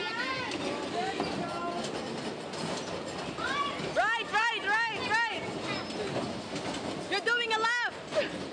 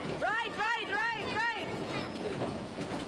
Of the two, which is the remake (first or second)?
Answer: second